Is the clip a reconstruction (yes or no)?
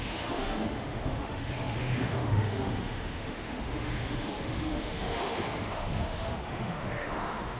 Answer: yes